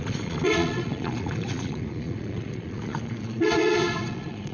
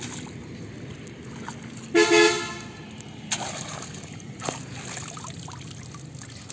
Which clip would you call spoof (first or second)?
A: first